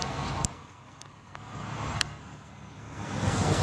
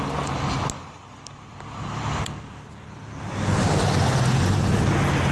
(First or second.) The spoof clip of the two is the first